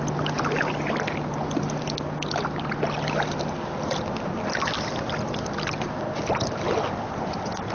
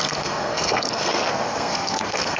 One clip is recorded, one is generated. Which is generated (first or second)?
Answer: second